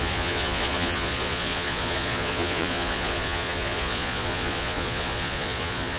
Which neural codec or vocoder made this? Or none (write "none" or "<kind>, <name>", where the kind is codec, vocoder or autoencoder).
vocoder, Vocos